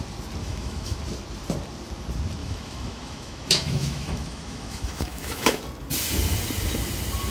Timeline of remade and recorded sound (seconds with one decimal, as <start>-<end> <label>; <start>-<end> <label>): 0.0-0.4 recorded; 0.4-1.0 remade; 1.0-2.4 recorded; 2.4-5.6 remade; 5.6-7.3 recorded